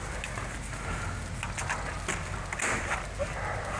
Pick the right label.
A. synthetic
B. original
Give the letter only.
B